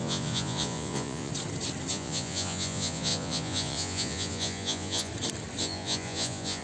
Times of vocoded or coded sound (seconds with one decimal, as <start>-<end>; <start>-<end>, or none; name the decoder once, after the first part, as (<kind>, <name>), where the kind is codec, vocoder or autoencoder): 0.0-1.3 (vocoder, Vocos); 1.9-5.1; 5.6-6.6